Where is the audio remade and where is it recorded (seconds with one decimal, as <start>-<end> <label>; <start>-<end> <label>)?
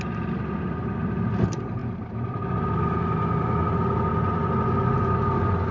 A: 0.0-5.7 recorded